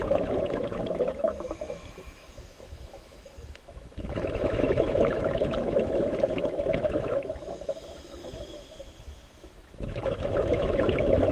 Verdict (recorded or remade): remade